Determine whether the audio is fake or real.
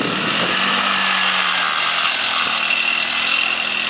real